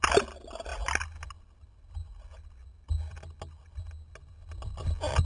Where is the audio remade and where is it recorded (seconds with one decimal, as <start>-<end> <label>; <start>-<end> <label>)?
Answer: 0.0-5.2 recorded